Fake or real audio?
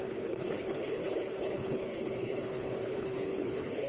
fake